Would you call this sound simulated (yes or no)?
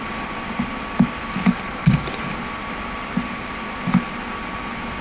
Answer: no